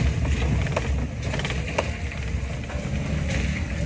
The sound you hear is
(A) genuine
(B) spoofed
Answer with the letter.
A